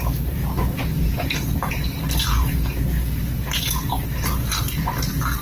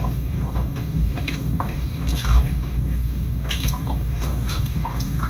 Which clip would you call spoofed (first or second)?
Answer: second